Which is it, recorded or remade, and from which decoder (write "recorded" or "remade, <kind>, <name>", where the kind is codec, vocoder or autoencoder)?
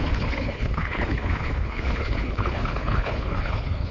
remade, codec, HILCodec